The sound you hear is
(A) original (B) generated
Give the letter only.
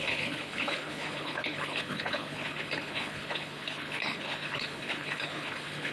B